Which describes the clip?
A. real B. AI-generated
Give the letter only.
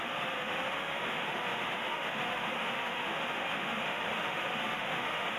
B